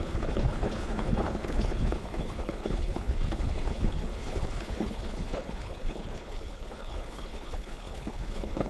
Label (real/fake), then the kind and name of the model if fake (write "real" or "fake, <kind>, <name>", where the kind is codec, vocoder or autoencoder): fake, codec, HILCodec